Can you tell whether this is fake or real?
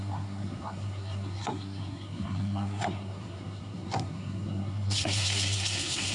fake